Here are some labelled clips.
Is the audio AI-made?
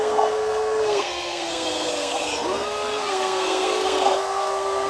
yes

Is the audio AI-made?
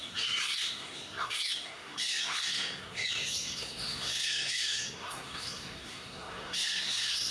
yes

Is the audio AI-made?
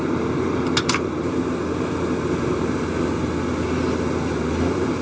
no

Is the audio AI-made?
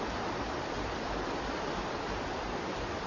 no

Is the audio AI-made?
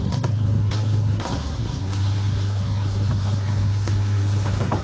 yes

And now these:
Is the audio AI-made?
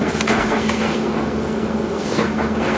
yes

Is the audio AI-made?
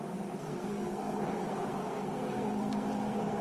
yes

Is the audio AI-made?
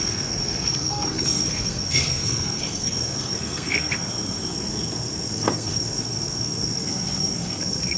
yes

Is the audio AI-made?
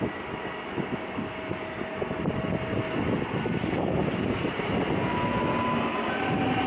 no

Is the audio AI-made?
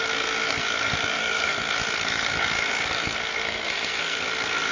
yes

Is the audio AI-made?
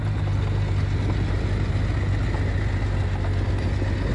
no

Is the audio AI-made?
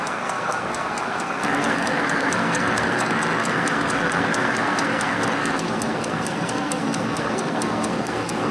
yes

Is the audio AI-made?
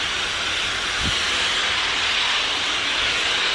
no